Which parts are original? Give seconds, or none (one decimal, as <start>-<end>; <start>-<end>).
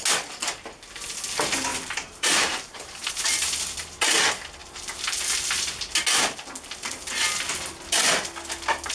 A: 0.0-1.7; 3.5-8.9